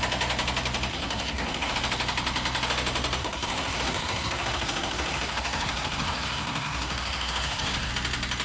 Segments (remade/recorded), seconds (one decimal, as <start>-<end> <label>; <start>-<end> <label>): 0.0-0.9 recorded; 0.9-1.7 remade; 1.7-3.2 recorded; 3.2-7.9 remade; 7.9-8.4 recorded